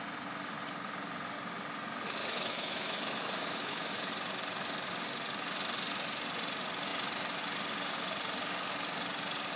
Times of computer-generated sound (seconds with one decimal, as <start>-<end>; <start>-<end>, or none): 2.2-4.1

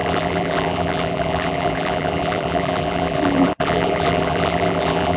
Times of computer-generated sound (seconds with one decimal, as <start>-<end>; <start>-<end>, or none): 0.0-5.2